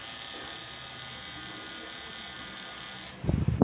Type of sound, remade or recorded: recorded